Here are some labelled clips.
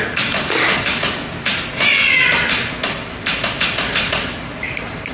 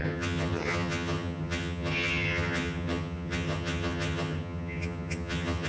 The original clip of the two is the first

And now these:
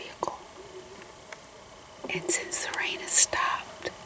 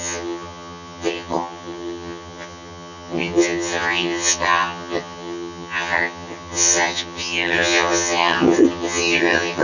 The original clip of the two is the first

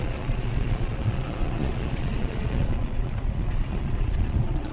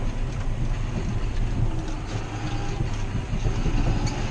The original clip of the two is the second